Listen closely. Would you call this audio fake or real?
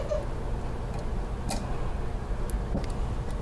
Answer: real